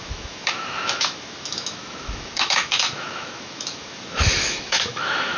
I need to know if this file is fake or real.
fake